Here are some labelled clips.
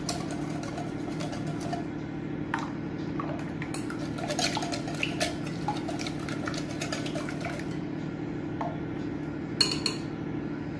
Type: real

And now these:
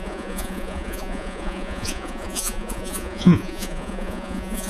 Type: fake